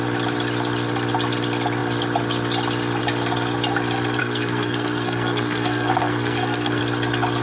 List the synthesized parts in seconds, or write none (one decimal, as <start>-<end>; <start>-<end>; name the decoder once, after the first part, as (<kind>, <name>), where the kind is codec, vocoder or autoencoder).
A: 4.2-6.8 (codec, SNAC)